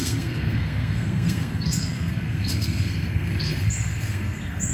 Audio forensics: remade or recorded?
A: remade